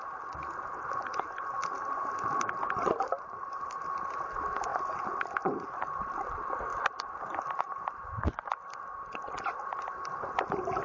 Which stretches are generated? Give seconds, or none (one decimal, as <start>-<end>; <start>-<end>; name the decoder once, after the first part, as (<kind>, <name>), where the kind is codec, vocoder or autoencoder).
1.6-4.1 (vocoder, BigVGAN v2); 6.7-9.5